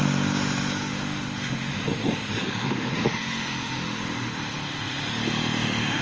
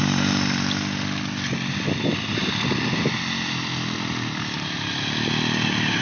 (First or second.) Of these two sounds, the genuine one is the second